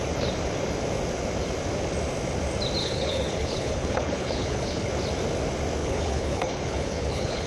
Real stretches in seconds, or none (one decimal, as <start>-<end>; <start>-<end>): 0.0-2.8; 4.9-5.8